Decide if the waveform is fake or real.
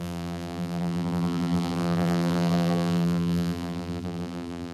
fake